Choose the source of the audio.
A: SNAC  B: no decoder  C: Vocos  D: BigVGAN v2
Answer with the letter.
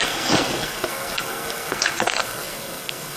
A